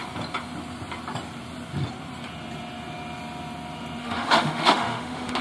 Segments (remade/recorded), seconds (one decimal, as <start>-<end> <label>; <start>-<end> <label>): 0.0-4.0 recorded; 4.0-5.4 remade